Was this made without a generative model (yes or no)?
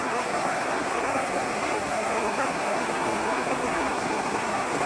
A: no